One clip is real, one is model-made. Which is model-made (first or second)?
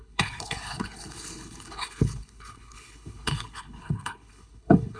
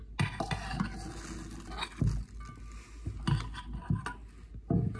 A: first